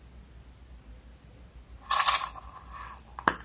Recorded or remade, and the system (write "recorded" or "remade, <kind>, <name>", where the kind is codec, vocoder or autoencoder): recorded